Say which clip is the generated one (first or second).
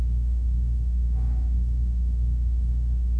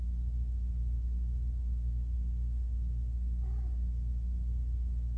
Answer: first